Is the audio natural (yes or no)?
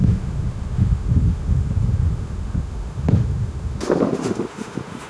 no